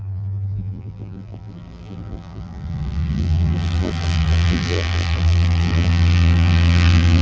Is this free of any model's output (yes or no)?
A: no